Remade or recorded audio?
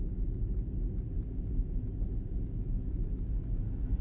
recorded